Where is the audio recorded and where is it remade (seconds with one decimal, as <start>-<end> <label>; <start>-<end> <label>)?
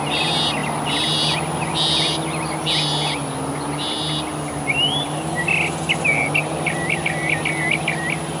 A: 0.0-8.4 recorded